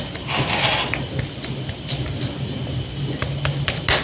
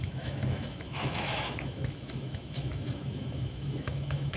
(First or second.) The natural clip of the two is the first